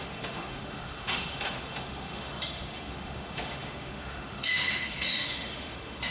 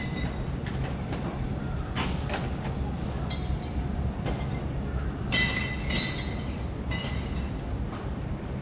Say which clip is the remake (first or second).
first